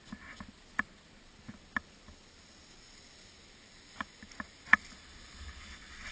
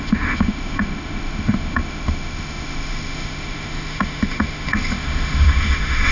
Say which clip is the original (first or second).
first